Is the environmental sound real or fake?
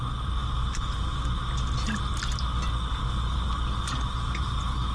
real